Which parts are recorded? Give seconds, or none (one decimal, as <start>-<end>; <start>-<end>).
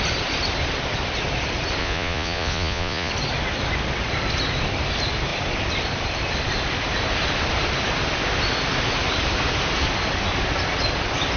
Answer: 0.0-1.8; 3.1-11.4